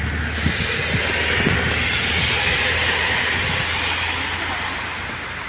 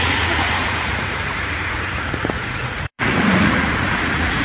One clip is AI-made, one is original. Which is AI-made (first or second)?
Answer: second